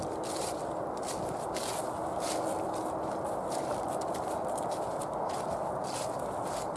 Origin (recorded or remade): recorded